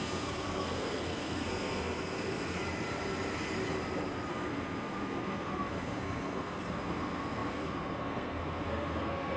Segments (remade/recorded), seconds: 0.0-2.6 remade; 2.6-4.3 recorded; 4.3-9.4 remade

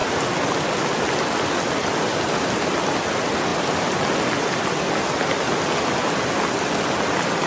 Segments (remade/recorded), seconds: 0.0-3.0 remade; 3.0-7.5 recorded

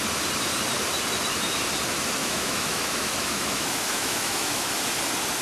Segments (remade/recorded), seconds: 0.0-2.2 recorded; 2.2-4.7 remade; 4.7-5.4 recorded

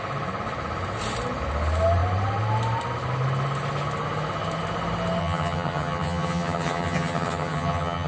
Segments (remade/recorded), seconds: 0.0-5.2 recorded; 5.2-8.1 remade

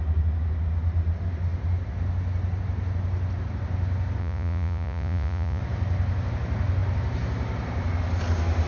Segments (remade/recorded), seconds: 0.0-4.2 recorded; 4.2-5.6 remade; 5.6-8.7 recorded

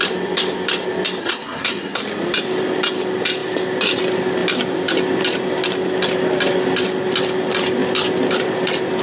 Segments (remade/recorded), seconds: 0.0-1.2 recorded; 1.2-2.0 remade; 2.0-9.0 recorded

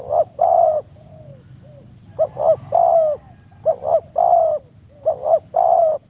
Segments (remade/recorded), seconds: 0.0-1.3 remade; 1.3-4.7 recorded; 4.7-6.1 remade